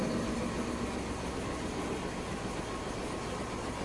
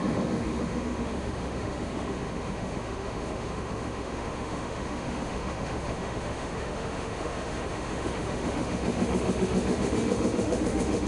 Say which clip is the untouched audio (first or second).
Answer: first